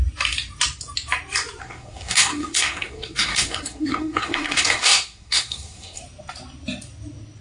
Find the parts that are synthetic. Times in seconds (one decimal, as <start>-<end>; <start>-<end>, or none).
1.6-6.0